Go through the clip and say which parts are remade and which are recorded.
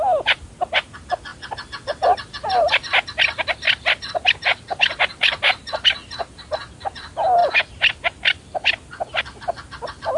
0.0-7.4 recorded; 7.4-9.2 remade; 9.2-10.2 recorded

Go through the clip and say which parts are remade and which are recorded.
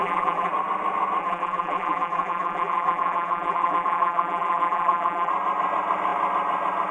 0.0-0.5 remade; 0.5-1.2 recorded; 1.2-5.3 remade; 5.3-6.9 recorded